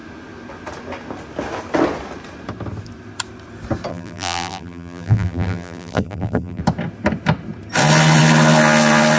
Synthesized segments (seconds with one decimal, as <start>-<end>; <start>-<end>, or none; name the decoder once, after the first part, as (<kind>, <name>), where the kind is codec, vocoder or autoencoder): 3.9-6.6 (vocoder, BigVGAN v2)